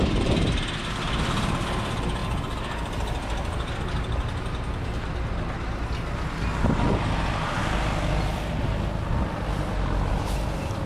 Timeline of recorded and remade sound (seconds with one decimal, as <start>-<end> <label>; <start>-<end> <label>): 0.0-10.9 recorded